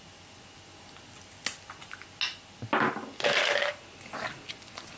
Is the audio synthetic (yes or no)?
no